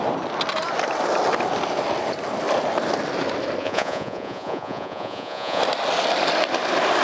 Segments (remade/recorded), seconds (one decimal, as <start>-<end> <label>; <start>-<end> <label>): 0.0-3.6 recorded; 3.6-5.6 remade; 5.6-7.0 recorded